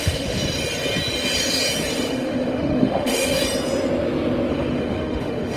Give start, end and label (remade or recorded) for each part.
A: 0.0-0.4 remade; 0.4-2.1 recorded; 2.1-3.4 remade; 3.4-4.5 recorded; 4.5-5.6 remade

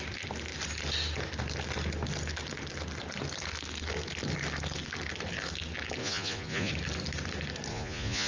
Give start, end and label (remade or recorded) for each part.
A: 0.0-6.0 recorded; 6.0-6.7 remade; 6.7-7.7 recorded; 7.7-8.3 remade

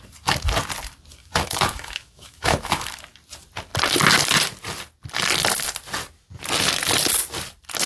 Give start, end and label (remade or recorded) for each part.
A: 0.0-1.2 recorded; 1.2-3.0 remade; 3.0-7.9 recorded

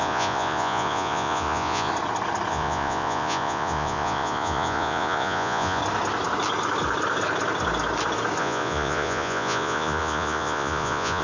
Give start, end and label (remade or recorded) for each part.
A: 0.0-1.9 remade; 1.9-2.5 recorded; 2.5-5.8 remade; 5.8-8.4 recorded; 8.4-11.2 remade

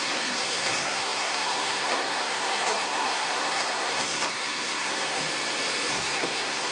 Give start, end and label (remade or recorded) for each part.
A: 0.0-5.2 remade; 5.2-5.9 recorded; 5.9-6.7 remade

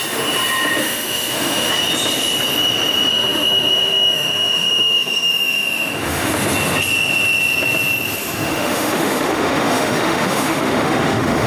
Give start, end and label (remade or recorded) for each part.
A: 0.0-0.8 recorded; 0.8-1.7 remade; 1.7-3.1 recorded; 3.1-6.3 remade; 6.3-8.2 recorded; 8.2-11.5 remade

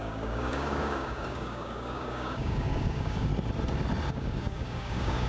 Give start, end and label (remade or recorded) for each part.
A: 0.0-3.3 remade; 3.3-4.1 recorded; 4.1-5.3 remade

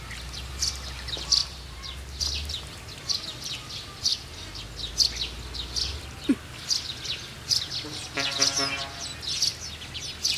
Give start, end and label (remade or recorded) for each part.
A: 0.0-1.4 recorded; 1.4-2.2 remade; 2.2-10.4 recorded